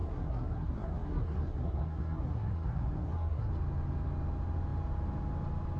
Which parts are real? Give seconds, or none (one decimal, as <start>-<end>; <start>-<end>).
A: 3.5-5.8